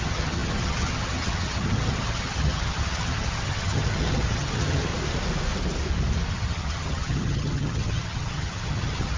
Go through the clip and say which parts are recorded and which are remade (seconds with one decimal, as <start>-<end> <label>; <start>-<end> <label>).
0.0-4.9 remade; 4.9-6.3 recorded; 6.3-9.2 remade